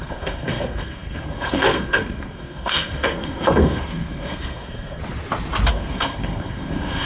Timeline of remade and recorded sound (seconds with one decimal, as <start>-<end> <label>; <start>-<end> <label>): 0.0-5.0 remade; 5.0-5.7 recorded; 5.7-7.1 remade